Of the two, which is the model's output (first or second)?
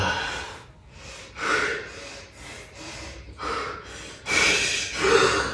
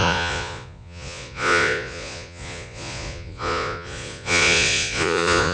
second